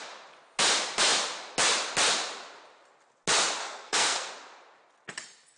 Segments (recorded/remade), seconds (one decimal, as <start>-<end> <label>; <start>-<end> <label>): 0.0-3.6 recorded; 3.6-4.3 remade; 4.3-5.6 recorded

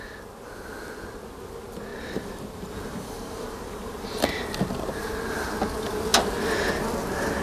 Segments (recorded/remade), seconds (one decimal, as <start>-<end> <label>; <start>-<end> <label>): 0.0-1.9 recorded; 1.9-4.2 remade; 4.2-7.4 recorded

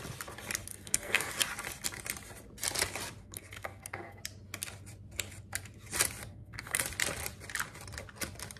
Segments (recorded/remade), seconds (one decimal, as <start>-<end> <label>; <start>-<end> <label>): 0.0-0.7 recorded; 0.7-1.3 remade; 1.3-3.2 recorded; 3.2-4.2 remade; 4.2-6.3 recorded; 6.3-6.8 remade; 6.8-8.6 recorded

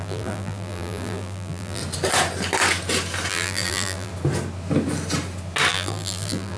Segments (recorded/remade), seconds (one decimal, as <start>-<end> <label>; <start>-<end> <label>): 0.0-1.8 remade; 1.8-3.3 recorded; 3.3-4.1 remade; 4.1-5.7 recorded; 5.7-6.6 remade